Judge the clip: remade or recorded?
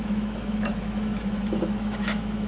remade